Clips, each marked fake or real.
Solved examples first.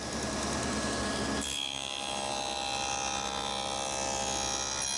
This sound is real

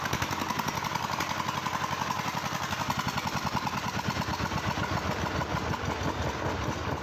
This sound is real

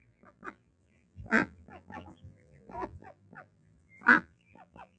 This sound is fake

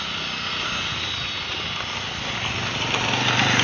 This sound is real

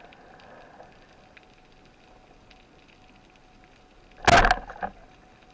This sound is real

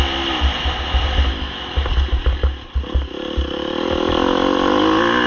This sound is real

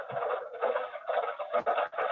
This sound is real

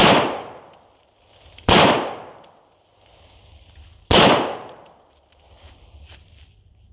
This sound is real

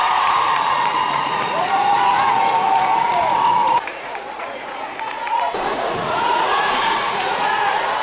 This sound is fake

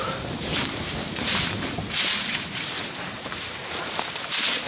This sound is fake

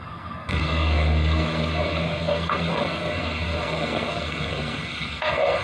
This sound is fake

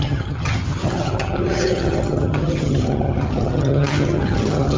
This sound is fake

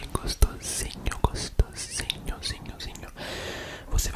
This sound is real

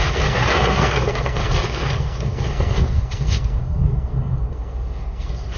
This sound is fake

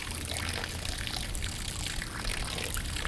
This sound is real